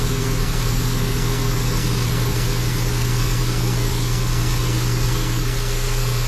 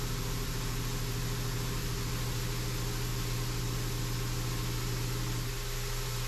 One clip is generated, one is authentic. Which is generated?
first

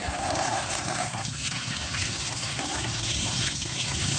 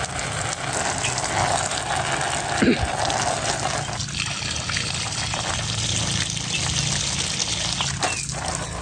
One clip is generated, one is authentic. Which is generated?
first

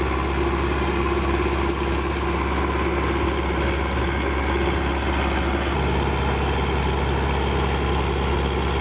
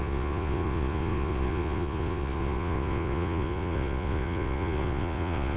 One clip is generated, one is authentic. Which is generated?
second